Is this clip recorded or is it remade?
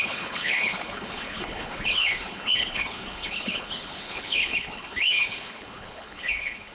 remade